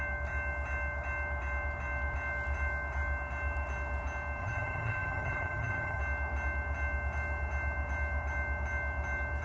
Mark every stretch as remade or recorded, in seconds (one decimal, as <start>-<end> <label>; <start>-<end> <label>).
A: 0.0-4.4 recorded; 4.4-6.0 remade; 6.0-9.4 recorded